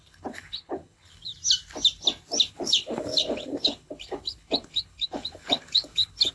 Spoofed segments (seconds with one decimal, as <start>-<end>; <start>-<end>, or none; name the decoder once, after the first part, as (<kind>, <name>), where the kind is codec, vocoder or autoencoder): 0.0-1.3 (codec, HILCodec); 2.5-6.3